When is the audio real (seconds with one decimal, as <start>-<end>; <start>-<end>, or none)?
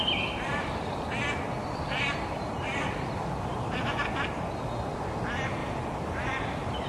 0.0-1.6; 4.0-5.6